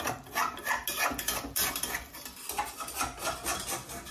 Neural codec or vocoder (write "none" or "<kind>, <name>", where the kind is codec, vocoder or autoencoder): none